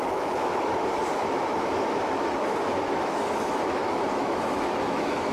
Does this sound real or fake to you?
fake